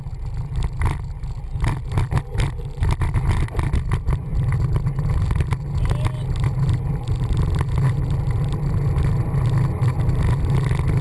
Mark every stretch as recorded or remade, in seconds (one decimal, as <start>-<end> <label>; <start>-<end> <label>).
0.0-11.0 recorded